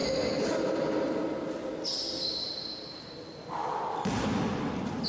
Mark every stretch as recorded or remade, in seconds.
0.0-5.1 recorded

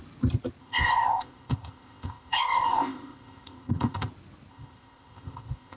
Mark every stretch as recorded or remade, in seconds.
0.0-0.6 recorded; 0.6-4.1 remade; 4.1-4.5 recorded; 4.5-5.8 remade

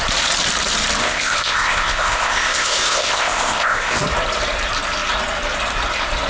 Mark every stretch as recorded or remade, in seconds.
0.0-1.0 recorded; 1.0-4.0 remade; 4.0-6.3 recorded